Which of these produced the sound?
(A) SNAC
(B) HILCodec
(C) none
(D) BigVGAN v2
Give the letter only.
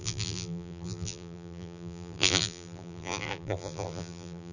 D